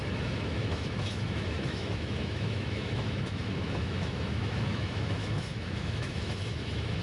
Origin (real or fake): fake